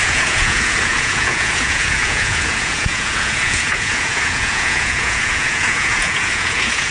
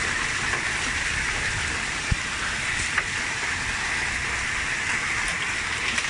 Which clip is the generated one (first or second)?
first